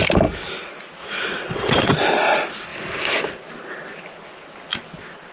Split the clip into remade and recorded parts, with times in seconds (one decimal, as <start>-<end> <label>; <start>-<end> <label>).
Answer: 0.0-1.0 recorded; 1.0-1.9 remade; 1.9-5.3 recorded